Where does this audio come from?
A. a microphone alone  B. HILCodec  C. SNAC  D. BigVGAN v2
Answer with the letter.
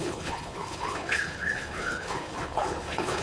B